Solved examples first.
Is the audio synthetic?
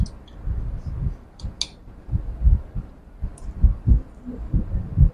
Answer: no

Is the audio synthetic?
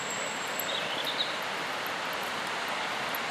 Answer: no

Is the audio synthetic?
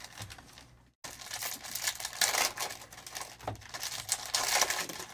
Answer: no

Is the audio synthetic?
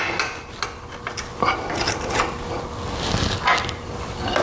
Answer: no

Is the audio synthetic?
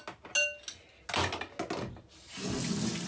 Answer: no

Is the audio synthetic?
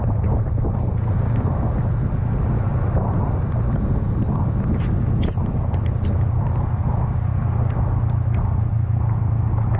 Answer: no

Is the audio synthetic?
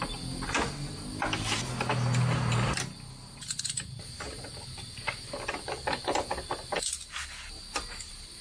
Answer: no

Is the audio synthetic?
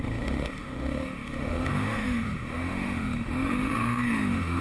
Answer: yes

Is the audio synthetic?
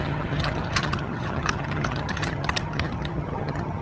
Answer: yes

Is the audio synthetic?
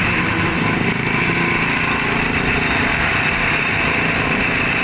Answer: no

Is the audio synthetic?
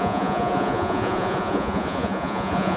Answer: yes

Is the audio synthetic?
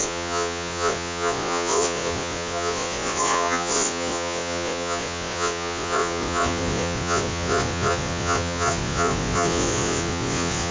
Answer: yes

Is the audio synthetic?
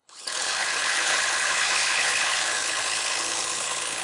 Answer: yes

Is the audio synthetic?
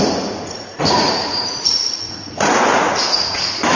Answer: yes